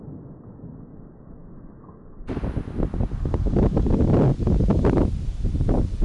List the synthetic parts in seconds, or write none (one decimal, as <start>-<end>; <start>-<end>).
none